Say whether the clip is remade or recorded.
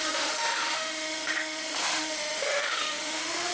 remade